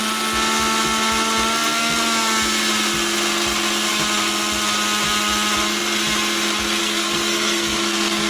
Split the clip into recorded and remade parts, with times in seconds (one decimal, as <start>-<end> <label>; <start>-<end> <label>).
0.0-6.8 recorded; 6.8-8.3 remade